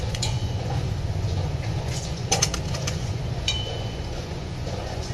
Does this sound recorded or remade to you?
remade